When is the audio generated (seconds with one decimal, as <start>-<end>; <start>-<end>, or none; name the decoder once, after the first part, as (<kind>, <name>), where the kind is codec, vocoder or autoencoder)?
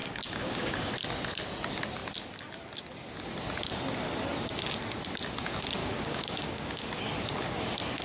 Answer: 0.0-0.9 (codec, DAC); 5.8-7.1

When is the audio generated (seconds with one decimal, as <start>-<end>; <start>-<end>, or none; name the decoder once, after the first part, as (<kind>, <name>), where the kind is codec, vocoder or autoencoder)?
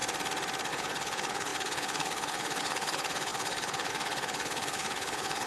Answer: 0.7-5.5 (codec, HILCodec)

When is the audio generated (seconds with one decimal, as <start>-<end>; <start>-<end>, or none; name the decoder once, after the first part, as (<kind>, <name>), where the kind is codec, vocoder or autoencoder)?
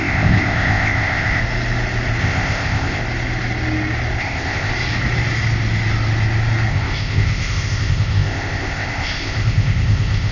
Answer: 0.0-1.4 (codec, ZipCodec); 2.2-3.0; 4.2-4.7; 6.7-10.3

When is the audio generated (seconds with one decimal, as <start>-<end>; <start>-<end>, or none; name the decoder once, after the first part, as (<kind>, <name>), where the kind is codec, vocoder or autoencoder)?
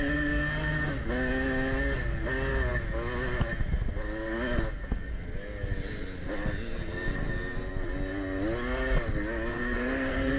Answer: 9.5-10.4 (codec, SNAC)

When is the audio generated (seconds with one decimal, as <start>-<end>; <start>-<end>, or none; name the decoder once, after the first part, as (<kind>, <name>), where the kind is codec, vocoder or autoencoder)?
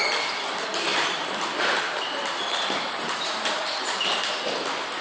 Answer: 0.9-3.9 (vocoder, BigVGAN v2)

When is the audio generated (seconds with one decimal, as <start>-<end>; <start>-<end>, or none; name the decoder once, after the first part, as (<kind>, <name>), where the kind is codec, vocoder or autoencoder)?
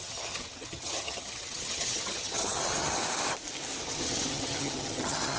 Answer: 0.0-3.0 (vocoder, HiFi-GAN); 3.8-5.4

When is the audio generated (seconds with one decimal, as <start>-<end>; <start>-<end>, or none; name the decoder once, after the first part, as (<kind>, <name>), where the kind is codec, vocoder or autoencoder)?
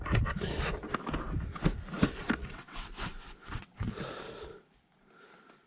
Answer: 2.4-4.0 (vocoder, WaveNeXt)